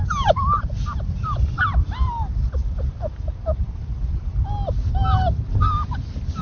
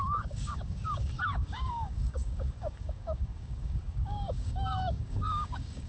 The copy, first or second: second